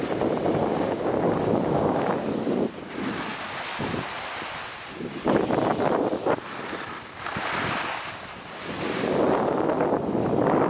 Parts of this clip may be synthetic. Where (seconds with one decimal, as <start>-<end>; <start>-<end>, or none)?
0.7-2.0